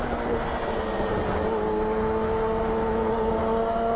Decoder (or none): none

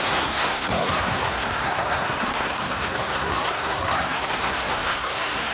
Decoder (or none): codec, SNAC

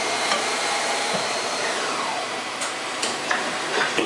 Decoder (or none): vocoder, BigVGAN v2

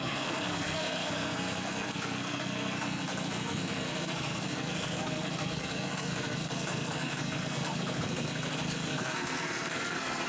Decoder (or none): codec, SNAC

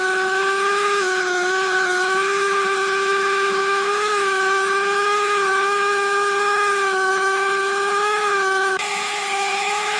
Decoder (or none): codec, HILCodec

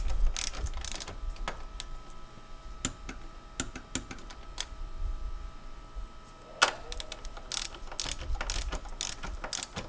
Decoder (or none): none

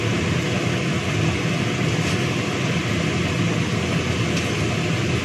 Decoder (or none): none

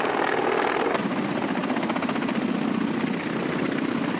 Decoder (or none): none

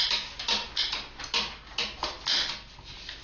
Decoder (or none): none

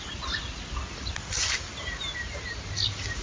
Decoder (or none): none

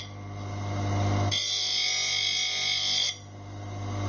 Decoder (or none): none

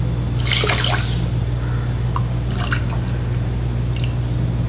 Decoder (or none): none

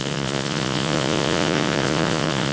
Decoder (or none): vocoder, Vocos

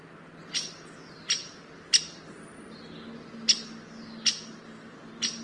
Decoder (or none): none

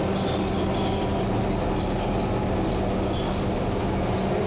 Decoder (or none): none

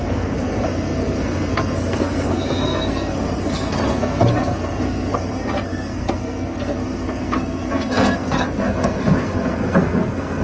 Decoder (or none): codec, SNAC